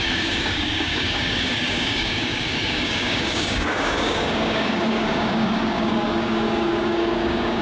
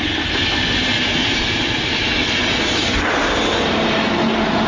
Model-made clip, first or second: first